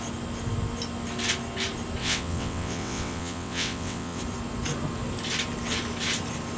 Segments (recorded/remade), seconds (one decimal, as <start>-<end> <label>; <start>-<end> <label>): 0.0-2.0 recorded; 2.0-4.2 remade; 4.2-6.6 recorded